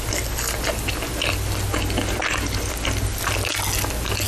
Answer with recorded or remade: recorded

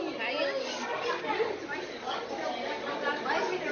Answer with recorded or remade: recorded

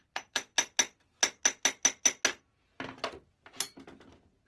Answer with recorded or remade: recorded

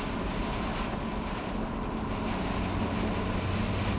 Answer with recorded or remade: recorded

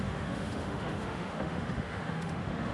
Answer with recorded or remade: remade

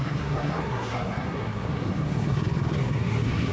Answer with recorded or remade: remade